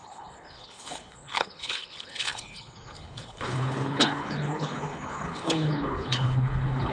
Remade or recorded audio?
remade